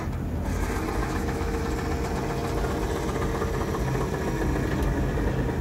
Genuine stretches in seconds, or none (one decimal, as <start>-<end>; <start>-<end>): 0.0-1.0; 1.6-5.6